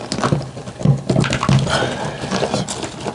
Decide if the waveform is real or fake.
real